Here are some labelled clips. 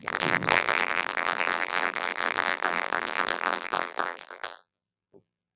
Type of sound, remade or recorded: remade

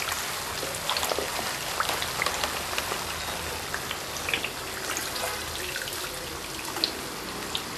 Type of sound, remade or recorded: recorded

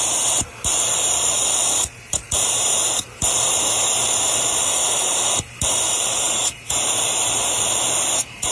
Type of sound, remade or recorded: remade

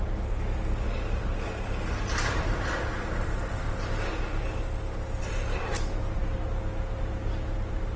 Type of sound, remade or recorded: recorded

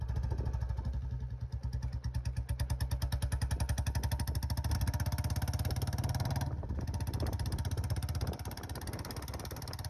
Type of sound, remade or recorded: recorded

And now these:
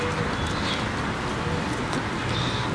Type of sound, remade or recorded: recorded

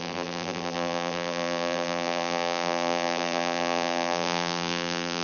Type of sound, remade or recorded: remade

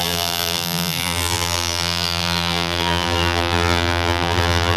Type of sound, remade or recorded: remade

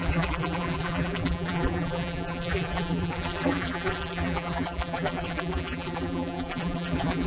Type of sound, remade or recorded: remade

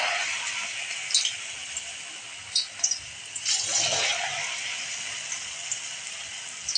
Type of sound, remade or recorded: recorded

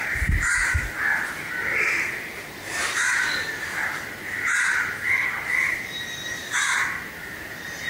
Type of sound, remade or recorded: remade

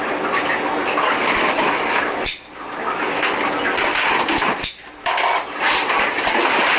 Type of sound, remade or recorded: recorded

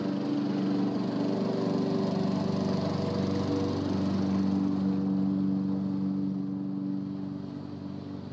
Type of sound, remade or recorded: recorded